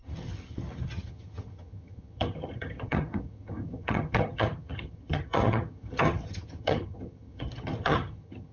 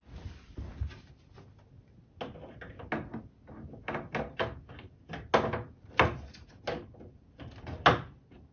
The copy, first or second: first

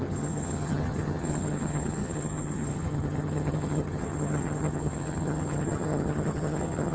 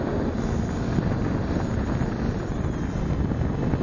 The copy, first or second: first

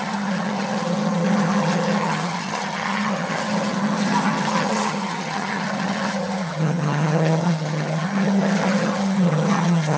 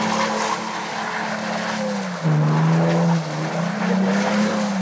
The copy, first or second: first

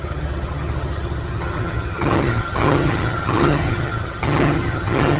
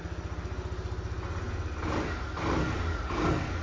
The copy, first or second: first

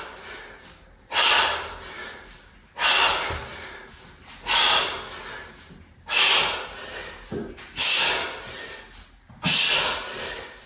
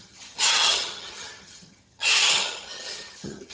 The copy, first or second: second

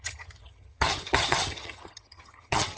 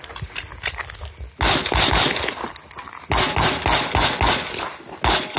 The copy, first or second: first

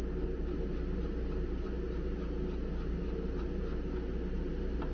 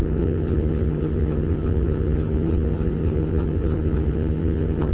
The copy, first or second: second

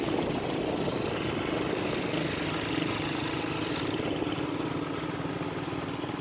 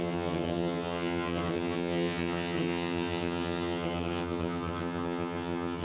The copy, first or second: second